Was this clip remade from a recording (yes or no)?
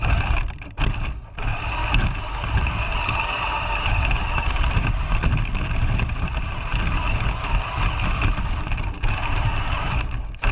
no